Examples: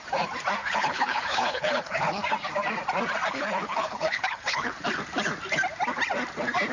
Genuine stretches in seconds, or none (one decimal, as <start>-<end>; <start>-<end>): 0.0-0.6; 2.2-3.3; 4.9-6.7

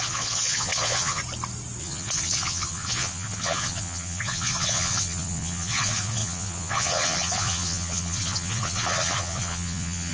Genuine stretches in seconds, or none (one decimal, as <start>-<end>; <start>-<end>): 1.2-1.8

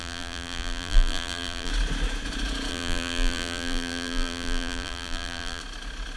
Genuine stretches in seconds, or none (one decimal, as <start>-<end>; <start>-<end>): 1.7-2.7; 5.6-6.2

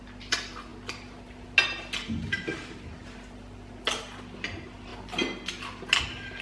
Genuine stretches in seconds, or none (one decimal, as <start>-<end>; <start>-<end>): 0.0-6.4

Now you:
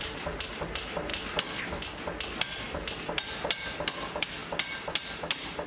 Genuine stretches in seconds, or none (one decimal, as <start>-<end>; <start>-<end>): 0.0-5.7